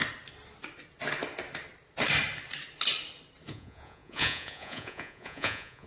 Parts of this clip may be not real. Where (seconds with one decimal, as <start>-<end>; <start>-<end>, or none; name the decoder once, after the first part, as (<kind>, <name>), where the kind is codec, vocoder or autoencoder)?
3.5-5.9 (vocoder, Vocos)